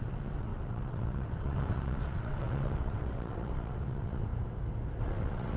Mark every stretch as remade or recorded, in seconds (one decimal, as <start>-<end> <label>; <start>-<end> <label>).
0.0-4.3 remade; 4.3-5.0 recorded; 5.0-5.6 remade